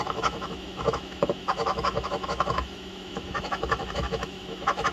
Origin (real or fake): fake